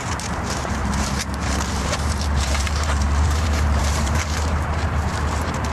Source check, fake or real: fake